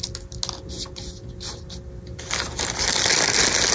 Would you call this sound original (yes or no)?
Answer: yes